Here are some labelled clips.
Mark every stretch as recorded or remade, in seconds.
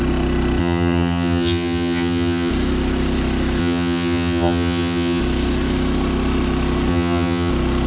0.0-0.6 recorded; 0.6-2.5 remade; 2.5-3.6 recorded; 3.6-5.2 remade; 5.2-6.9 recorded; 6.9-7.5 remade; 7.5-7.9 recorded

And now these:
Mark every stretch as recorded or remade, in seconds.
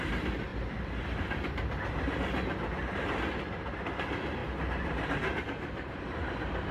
0.0-6.7 recorded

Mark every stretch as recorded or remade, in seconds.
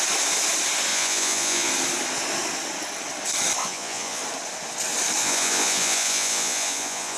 0.0-0.9 recorded; 0.9-1.7 remade; 1.7-3.6 recorded; 3.6-4.2 remade; 4.2-5.2 recorded; 5.2-7.2 remade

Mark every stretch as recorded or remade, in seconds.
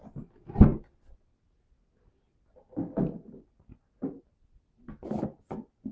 0.0-5.9 recorded